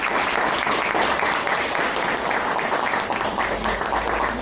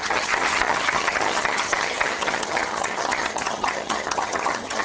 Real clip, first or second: first